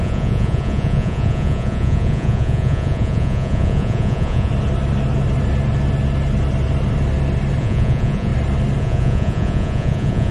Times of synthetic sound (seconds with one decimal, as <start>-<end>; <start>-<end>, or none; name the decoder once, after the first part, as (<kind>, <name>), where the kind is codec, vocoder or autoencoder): 0.0-4.5 (vocoder, Vocos); 7.6-8.3; 8.8-10.3